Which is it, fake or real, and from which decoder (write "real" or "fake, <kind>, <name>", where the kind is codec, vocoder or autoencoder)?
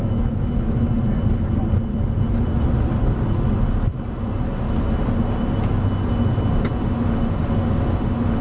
real